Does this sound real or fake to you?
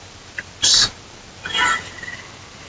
real